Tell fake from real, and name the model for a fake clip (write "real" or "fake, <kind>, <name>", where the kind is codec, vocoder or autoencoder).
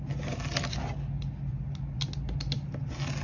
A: real